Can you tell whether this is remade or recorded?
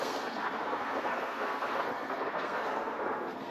remade